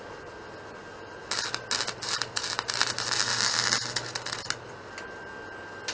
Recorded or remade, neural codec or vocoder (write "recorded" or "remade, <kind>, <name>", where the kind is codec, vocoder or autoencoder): recorded